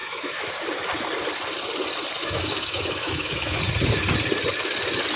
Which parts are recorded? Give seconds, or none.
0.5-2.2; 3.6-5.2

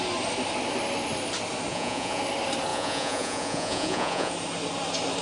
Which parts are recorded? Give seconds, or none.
0.0-1.7; 2.2-2.7; 4.3-5.2